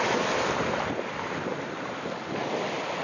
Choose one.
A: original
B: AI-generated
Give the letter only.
A